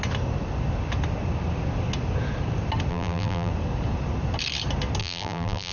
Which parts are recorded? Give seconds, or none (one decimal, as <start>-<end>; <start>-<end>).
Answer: 0.0-2.9; 3.5-5.0